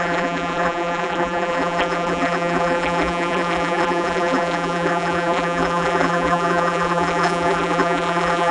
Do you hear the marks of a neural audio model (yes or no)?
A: yes